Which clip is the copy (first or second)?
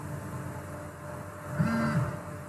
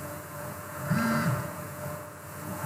second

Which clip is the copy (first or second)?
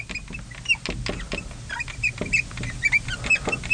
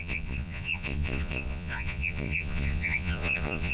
second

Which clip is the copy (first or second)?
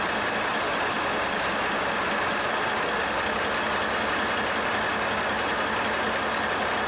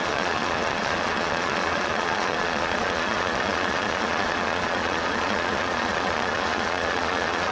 second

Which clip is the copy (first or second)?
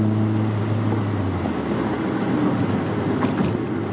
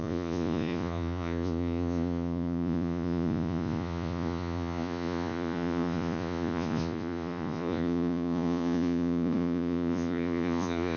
second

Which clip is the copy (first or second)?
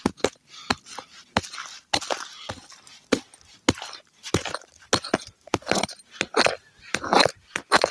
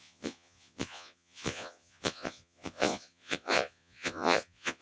second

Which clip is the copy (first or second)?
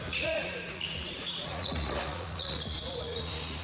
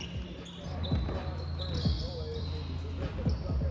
first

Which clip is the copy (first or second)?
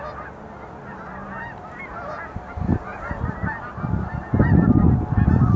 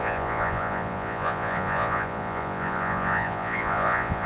second